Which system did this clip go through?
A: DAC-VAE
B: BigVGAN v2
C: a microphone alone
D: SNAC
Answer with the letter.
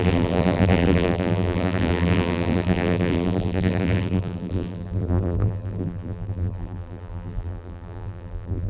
B